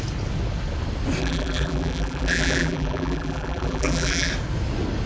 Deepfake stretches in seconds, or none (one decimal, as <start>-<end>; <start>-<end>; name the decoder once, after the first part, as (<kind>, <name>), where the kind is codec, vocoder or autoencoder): 1.2-4.3 (vocoder, BigVGAN v2)